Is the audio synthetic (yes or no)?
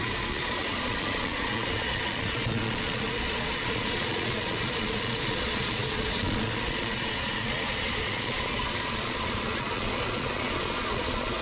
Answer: yes